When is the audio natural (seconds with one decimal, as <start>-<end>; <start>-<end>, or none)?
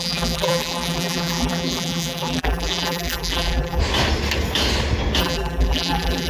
3.8-5.2